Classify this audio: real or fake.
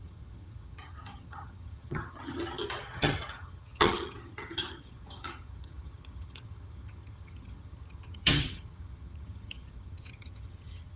fake